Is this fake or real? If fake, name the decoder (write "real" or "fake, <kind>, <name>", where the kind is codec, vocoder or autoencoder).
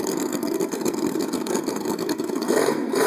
fake, codec, SNAC